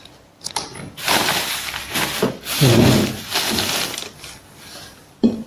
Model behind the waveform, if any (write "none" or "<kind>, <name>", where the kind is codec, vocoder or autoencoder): none